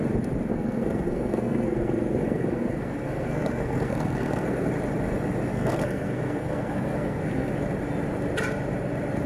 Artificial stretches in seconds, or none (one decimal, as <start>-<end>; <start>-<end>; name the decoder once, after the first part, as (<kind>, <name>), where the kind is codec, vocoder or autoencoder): 0.5-4.7 (codec, SNAC); 5.5-7.5